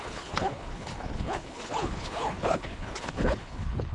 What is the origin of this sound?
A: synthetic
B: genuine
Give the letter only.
A